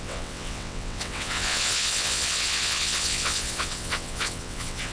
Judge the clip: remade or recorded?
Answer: remade